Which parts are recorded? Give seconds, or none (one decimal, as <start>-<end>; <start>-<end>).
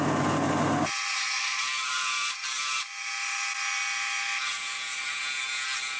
0.0-6.0